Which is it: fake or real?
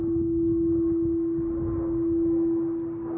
real